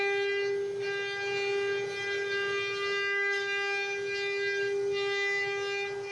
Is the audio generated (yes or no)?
no